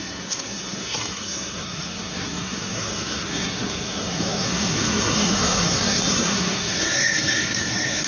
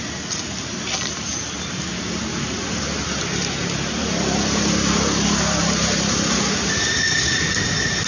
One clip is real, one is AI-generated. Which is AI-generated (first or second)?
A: first